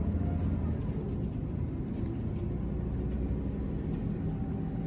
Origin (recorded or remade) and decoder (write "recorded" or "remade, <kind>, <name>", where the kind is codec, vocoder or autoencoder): recorded